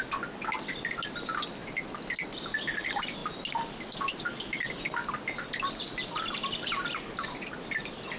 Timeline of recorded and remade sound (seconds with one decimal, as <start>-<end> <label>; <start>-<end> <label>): 0.0-8.2 recorded